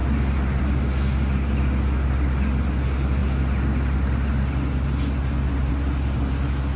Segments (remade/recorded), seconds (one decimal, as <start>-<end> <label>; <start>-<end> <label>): 0.0-6.8 recorded